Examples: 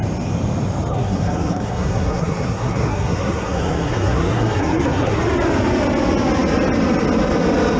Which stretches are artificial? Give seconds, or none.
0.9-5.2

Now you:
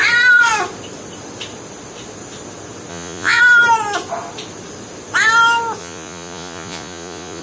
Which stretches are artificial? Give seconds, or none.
2.9-3.4; 5.8-7.4

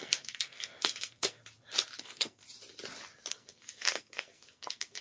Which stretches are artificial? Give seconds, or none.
0.0-1.4; 2.0-2.4; 3.3-5.0

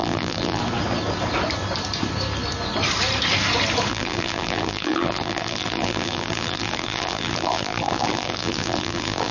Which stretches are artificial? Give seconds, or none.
0.0-0.6; 3.9-9.3